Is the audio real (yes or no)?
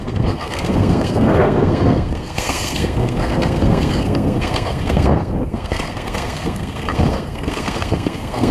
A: no